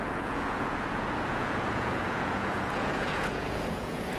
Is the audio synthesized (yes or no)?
yes